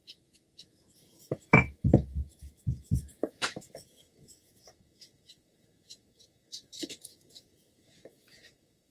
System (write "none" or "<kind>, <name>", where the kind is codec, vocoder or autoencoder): autoencoder, DAC-VAE